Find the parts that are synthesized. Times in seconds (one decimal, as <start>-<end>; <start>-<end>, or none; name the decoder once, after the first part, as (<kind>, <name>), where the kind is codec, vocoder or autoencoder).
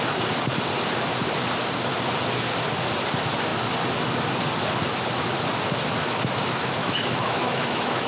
6.8-8.1 (autoencoder, DAC-VAE)